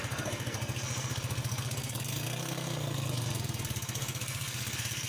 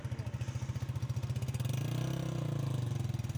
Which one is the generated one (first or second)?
first